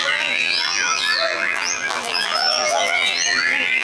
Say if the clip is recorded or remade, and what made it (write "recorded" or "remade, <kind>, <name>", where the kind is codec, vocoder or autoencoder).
remade, vocoder, BigVGAN v2